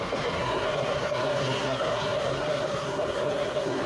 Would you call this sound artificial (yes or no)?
yes